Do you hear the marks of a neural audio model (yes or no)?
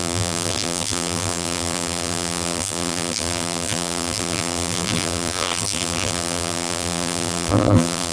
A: yes